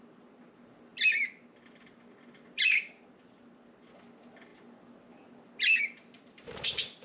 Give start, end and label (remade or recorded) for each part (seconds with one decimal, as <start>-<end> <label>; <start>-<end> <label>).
0.0-7.0 recorded